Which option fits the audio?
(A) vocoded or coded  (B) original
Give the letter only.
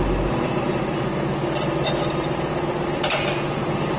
B